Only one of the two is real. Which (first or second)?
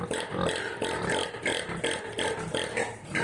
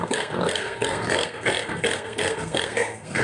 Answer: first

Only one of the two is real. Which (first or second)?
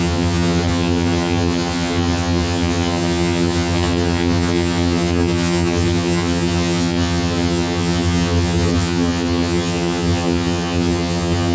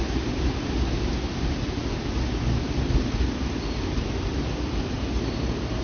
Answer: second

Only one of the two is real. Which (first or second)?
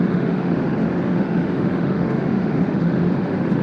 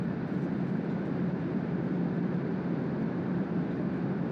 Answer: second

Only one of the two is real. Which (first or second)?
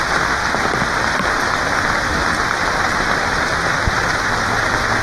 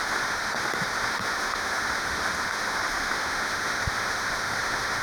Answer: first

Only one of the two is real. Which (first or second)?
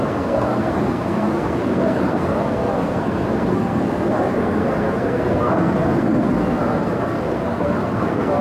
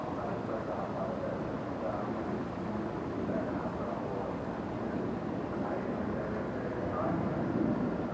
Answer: second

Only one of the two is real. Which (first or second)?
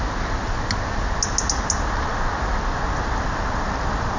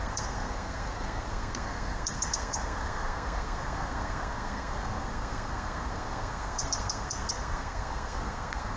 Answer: first